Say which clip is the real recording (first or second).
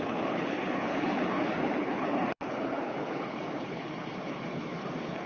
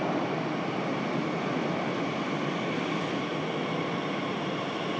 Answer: second